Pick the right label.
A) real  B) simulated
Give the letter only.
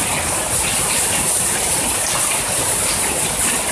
A